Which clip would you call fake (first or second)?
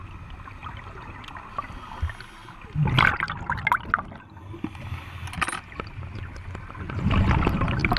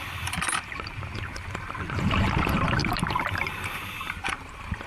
second